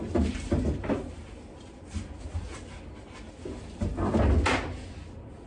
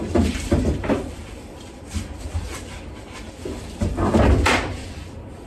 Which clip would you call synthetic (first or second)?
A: second